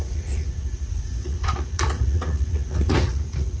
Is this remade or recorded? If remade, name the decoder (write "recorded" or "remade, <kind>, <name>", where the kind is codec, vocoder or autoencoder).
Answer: remade, vocoder, Vocos